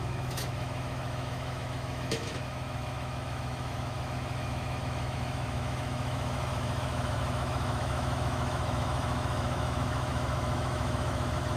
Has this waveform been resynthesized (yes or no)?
yes